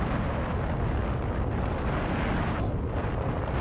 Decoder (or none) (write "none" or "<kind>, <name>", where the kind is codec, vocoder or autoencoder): none